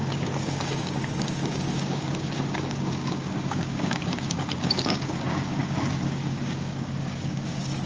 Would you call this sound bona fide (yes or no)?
no